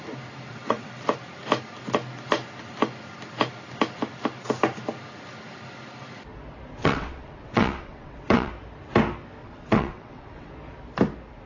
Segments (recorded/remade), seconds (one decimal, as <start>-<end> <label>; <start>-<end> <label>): 0.0-0.5 recorded; 0.5-1.0 remade; 1.0-6.8 recorded; 6.8-8.5 remade; 8.5-9.4 recorded; 9.4-10.5 remade; 10.5-11.5 recorded